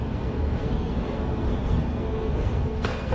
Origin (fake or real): fake